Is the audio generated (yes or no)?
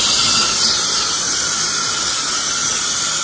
no